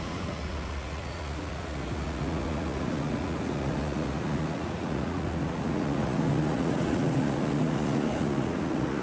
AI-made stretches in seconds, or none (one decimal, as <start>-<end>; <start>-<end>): 0.0-9.0